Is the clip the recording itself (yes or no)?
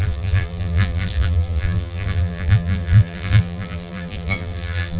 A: no